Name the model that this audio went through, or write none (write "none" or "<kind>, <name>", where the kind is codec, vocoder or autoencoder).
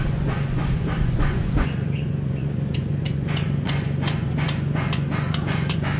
vocoder, Vocos